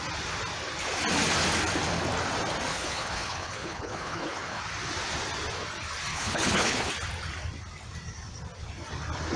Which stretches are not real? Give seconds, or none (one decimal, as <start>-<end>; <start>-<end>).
2.7-4.6; 6.1-6.9